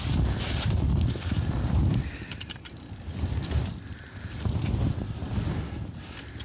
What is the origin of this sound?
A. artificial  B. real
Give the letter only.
A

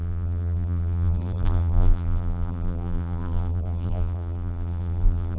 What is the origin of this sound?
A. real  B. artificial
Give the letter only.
B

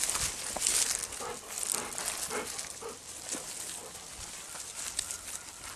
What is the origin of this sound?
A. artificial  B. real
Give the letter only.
B